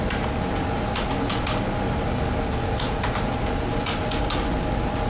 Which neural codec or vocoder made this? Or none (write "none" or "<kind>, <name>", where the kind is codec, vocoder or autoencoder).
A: none